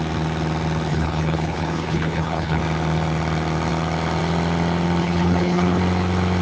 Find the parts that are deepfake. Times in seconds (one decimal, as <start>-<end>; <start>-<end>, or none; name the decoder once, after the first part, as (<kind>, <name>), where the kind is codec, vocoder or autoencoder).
0.9-2.6 (codec, HILCodec); 5.0-5.8